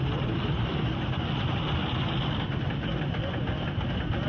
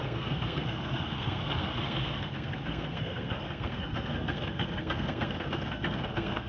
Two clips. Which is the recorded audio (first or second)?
first